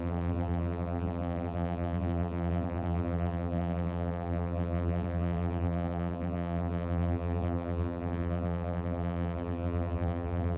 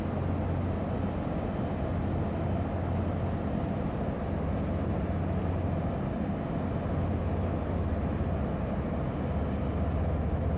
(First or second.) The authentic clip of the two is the second